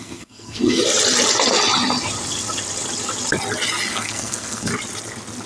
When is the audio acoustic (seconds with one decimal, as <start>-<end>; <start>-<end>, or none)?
0.8-3.9; 4.7-5.5